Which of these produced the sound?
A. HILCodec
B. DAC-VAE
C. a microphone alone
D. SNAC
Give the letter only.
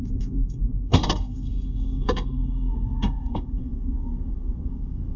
D